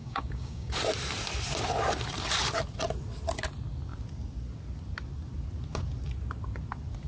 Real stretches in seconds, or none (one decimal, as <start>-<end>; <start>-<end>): 0.7-7.1

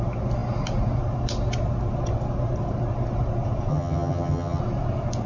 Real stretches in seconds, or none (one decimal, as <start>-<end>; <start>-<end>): 0.0-3.7; 4.6-5.3

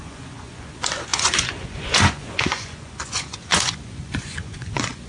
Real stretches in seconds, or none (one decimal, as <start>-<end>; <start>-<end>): none

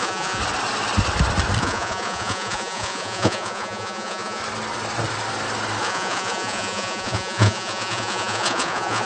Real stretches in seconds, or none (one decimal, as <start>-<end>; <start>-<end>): 0.4-1.6; 4.4-5.8